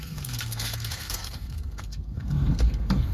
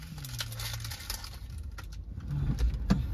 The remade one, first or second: first